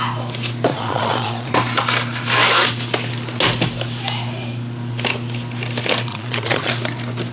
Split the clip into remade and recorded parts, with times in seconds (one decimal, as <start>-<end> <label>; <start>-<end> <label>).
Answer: 0.0-0.7 recorded; 0.7-1.5 remade; 1.5-6.1 recorded; 6.1-6.7 remade; 6.7-7.3 recorded